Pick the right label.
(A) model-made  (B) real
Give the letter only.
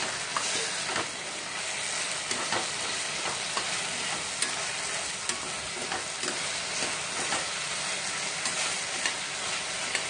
B